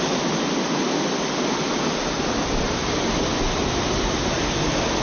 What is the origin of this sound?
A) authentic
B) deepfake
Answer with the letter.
A